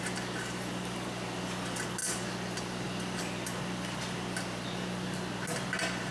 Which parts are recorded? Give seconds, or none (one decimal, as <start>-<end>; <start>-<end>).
0.0-6.1